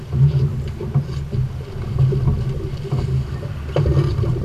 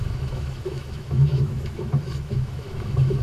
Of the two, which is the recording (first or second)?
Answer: first